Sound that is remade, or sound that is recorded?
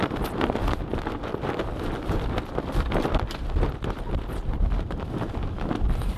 recorded